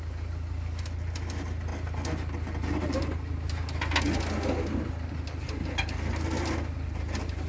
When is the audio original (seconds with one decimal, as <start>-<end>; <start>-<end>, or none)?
0.0-7.5